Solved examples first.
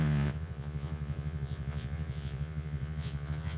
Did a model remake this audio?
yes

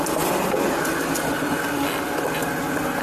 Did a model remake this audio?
no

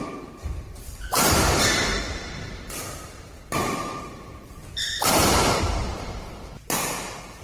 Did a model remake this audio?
yes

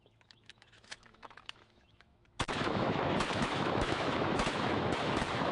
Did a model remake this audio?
yes